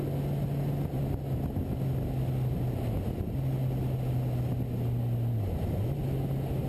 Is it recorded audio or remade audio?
recorded